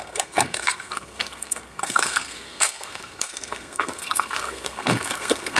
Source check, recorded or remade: remade